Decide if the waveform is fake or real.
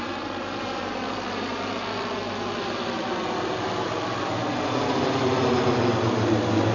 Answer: real